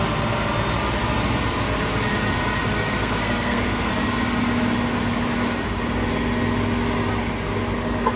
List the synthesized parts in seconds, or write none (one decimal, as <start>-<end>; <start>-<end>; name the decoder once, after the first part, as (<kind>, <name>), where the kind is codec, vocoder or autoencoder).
3.0-3.9 (codec, SNAC)